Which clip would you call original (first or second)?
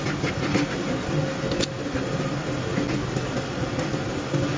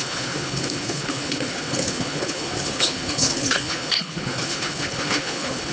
first